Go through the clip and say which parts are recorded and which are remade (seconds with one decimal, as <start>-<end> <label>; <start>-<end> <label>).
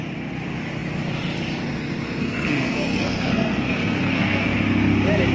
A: 0.0-2.2 recorded; 2.2-4.6 remade; 4.6-5.3 recorded